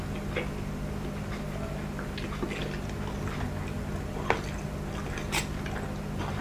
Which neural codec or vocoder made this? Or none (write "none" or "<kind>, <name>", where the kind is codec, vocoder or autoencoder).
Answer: none